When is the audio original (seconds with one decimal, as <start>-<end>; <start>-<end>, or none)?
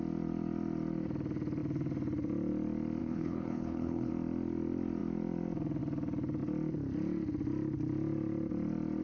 0.0-3.0; 4.1-9.0